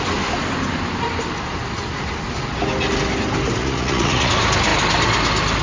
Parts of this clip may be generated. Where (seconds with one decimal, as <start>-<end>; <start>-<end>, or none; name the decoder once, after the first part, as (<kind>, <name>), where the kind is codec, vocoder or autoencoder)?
3.6-4.3 (vocoder, Vocos)